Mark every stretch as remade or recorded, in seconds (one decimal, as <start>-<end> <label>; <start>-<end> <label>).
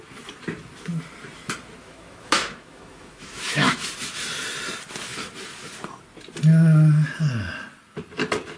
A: 0.0-1.8 recorded; 1.8-3.8 remade; 3.8-8.6 recorded